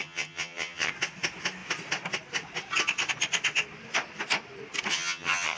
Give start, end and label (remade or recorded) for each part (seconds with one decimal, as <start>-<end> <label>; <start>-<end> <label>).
0.0-0.9 remade; 0.9-4.9 recorded; 4.9-5.6 remade